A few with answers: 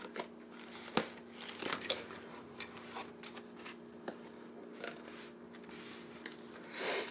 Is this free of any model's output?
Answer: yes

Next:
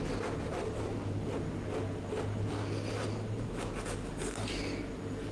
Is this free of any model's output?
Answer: yes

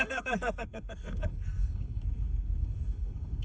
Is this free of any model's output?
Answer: no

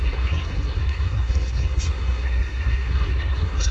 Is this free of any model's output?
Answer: no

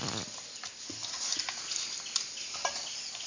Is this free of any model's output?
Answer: yes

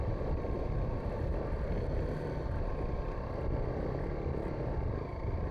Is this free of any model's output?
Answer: yes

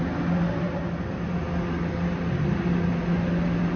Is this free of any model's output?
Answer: yes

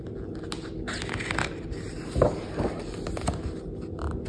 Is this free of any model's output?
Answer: yes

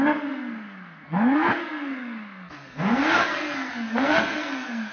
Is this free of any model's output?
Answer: no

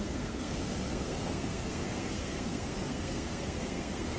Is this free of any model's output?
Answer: no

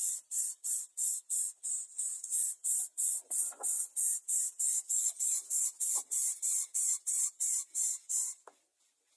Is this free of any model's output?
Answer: yes